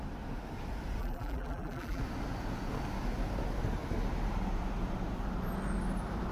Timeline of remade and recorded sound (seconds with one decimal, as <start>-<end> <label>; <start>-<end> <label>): 0.0-1.0 recorded; 1.0-2.0 remade; 2.0-6.3 recorded